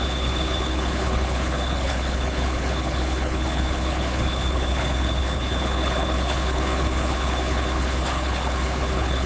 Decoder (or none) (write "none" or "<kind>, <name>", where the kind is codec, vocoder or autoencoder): codec, HILCodec